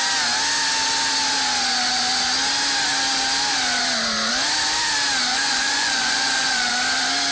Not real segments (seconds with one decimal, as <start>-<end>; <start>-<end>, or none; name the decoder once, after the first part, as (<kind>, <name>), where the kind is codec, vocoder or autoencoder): 5.3-6.7 (vocoder, Vocos)